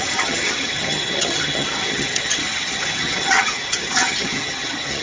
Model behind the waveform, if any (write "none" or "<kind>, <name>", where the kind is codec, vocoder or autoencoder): vocoder, HiFi-GAN